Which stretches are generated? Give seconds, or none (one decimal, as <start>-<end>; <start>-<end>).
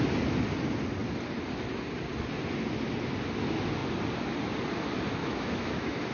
5.2-6.1